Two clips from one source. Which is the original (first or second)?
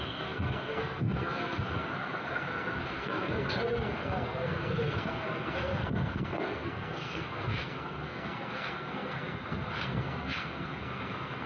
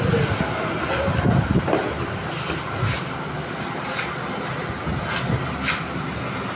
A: second